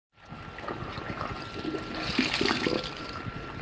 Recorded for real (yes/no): yes